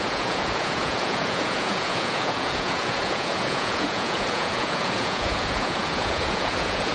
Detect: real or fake fake